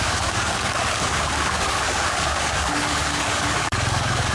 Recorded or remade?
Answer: remade